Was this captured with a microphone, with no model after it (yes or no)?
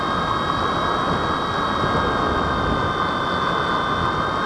yes